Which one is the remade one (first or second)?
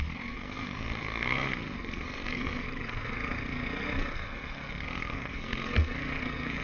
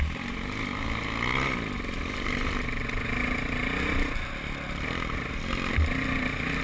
first